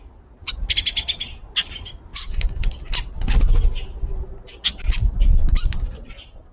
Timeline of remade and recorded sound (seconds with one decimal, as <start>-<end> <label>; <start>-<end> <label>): 0.0-6.5 recorded